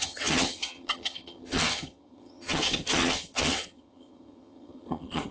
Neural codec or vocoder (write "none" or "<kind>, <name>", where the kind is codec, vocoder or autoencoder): vocoder, HiFi-GAN